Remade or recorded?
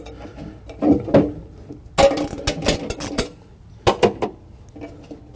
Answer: recorded